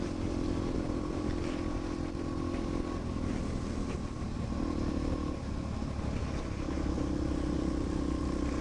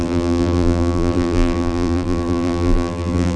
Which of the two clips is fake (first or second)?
second